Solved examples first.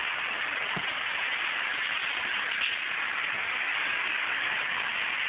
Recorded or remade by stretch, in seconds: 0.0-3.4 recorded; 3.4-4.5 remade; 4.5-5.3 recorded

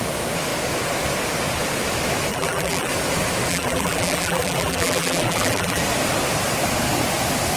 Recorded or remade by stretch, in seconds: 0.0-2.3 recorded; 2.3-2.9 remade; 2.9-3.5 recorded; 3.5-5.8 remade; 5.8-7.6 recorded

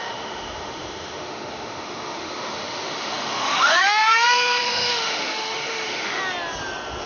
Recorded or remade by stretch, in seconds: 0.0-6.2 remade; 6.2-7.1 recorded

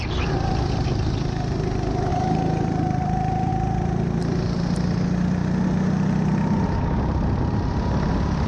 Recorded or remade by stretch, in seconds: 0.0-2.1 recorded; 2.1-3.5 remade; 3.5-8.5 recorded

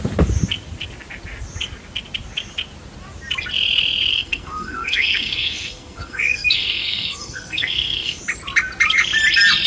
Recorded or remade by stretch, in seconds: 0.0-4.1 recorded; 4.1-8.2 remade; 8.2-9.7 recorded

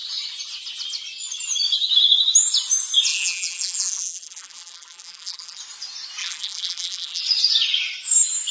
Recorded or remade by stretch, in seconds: 0.0-3.1 recorded; 3.1-5.6 remade; 5.6-6.2 recorded; 6.2-7.2 remade; 7.2-8.5 recorded